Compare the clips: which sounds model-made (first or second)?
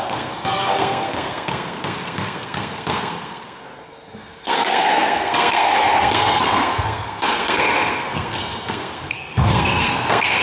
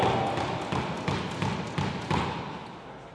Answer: first